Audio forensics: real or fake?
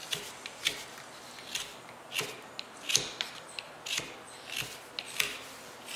real